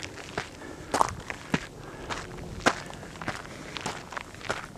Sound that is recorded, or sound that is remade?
recorded